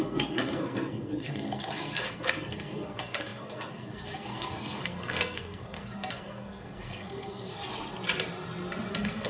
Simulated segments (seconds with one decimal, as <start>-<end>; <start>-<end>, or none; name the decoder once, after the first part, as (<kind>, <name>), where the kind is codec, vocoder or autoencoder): 0.0-7.5 (codec, SNAC); 8.9-9.3